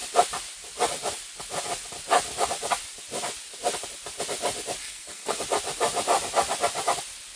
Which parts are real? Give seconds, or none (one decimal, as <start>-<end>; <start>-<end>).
0.0-4.8; 5.4-7.4